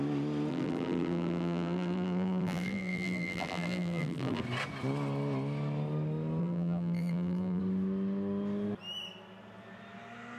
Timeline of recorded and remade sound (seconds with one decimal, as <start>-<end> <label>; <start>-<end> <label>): 0.0-0.5 recorded; 0.5-4.4 remade; 4.4-6.4 recorded; 6.4-7.6 remade; 7.6-10.4 recorded